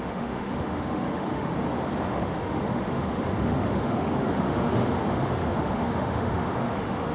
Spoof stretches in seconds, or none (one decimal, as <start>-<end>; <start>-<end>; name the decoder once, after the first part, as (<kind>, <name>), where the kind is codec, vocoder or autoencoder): 0.0-1.5 (autoencoder, DAC-VAE); 2.1-7.1